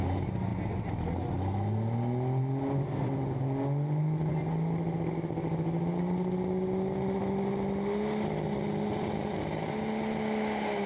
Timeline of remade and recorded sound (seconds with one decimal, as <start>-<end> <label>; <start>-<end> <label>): 0.0-10.9 recorded